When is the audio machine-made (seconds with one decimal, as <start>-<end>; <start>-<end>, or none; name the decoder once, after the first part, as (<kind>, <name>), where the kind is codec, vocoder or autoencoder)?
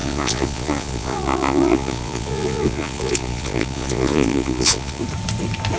0.0-5.0 (vocoder, Vocos)